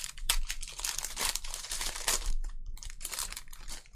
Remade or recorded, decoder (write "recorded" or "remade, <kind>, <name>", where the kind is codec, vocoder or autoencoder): remade, vocoder, BigVGAN v2